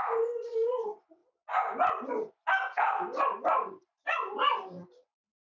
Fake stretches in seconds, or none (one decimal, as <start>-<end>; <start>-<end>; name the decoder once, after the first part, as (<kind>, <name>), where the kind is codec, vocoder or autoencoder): none